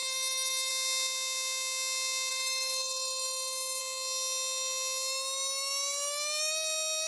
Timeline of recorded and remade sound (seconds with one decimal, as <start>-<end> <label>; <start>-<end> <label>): 0.0-0.7 remade; 0.7-2.3 recorded; 2.3-3.8 remade; 3.8-7.1 recorded